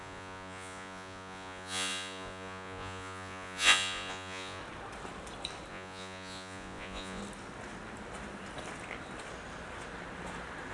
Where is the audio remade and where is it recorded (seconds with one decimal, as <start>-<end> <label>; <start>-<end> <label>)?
0.0-4.6 remade; 4.6-5.7 recorded; 5.7-7.2 remade; 7.2-10.7 recorded